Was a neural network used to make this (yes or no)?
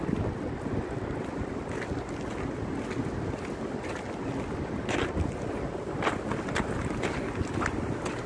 no